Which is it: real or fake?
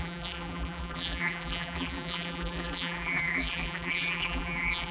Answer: fake